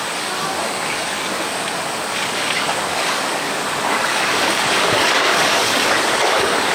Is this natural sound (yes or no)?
no